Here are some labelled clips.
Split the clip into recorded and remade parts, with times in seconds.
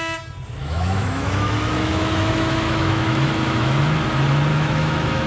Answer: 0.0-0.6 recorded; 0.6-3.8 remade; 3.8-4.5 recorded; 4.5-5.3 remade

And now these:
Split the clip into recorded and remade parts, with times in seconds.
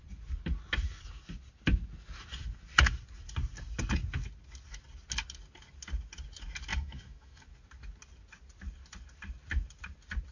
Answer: 0.0-6.7 recorded; 6.7-7.4 remade; 7.4-10.3 recorded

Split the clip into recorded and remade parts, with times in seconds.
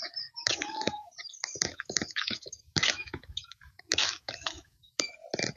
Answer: 0.0-0.4 recorded; 0.4-1.1 remade; 1.1-1.7 recorded; 1.7-5.1 remade; 5.1-5.6 recorded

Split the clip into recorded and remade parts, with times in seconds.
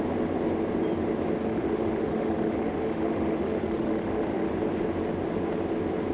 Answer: 0.0-1.4 recorded; 1.4-4.5 remade; 4.5-6.1 recorded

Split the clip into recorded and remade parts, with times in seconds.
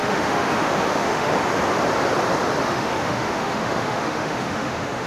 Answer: 0.0-1.3 remade; 1.3-2.6 recorded; 2.6-5.1 remade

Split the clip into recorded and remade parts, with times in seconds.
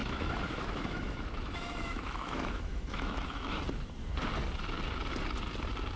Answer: 0.0-3.6 remade; 3.6-6.0 recorded